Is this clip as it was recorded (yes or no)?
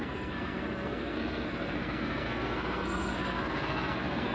no